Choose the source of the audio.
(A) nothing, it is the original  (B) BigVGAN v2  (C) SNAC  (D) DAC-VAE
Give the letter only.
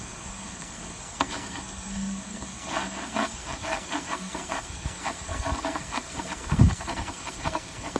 C